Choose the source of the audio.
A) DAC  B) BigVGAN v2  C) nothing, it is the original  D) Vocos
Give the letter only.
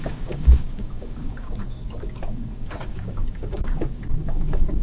A